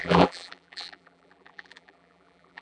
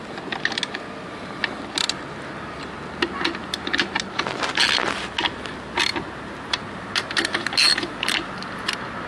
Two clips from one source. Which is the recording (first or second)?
second